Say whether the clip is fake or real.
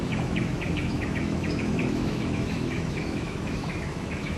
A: fake